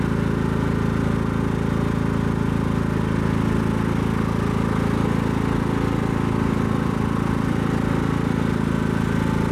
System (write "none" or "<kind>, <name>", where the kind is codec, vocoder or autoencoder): none